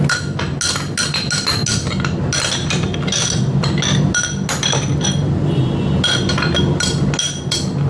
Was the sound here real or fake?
real